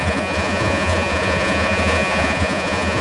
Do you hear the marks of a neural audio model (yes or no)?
yes